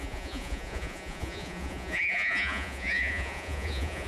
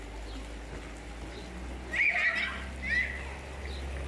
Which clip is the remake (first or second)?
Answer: first